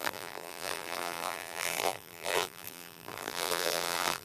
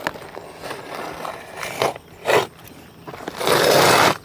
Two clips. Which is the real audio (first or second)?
second